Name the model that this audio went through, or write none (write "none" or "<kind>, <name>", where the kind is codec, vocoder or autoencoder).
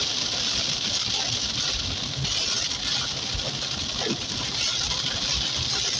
none